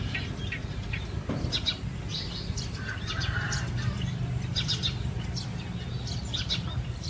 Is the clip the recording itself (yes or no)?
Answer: yes